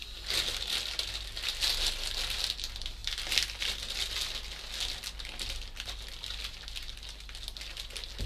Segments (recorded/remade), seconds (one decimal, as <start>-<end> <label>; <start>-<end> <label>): 0.0-8.3 recorded